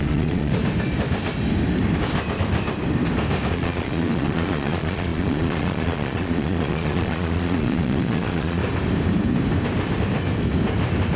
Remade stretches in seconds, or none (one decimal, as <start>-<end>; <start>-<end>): 0.0-0.5; 3.5-8.6